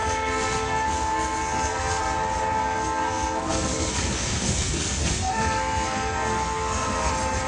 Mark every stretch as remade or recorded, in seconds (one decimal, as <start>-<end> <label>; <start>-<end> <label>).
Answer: 0.0-2.0 remade; 2.0-2.6 recorded; 2.6-7.1 remade; 7.1-7.5 recorded